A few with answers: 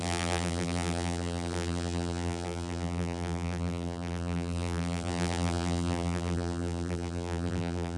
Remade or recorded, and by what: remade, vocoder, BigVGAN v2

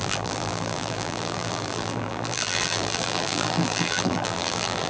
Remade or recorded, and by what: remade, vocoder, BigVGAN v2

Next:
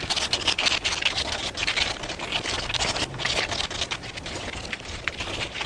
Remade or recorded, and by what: recorded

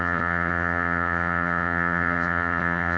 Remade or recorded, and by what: remade, vocoder, HiFi-GAN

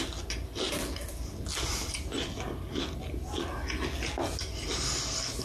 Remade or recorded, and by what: recorded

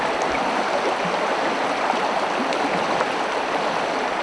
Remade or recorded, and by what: recorded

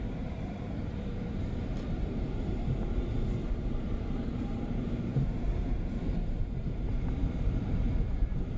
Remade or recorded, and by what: remade, vocoder, BigVGAN v2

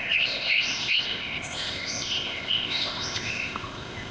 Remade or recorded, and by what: remade, codec, ZipCodec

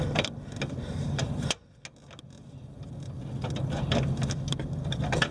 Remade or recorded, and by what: recorded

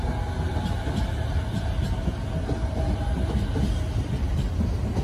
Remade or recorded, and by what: recorded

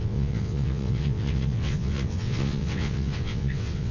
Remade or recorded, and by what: remade, vocoder, WaveNeXt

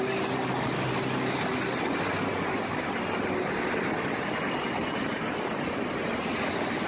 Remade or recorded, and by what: recorded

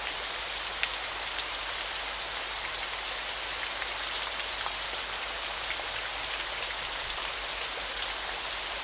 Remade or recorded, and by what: recorded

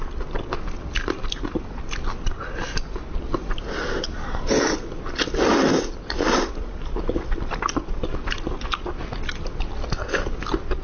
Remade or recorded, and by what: recorded